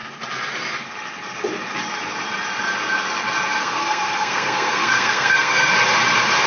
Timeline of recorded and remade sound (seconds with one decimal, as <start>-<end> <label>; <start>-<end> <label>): 0.0-3.6 recorded; 3.6-5.7 remade; 5.7-6.5 recorded